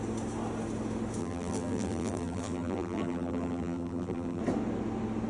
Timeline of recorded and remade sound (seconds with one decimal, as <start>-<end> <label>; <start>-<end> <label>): 0.0-1.2 recorded; 1.2-4.4 remade; 4.4-5.3 recorded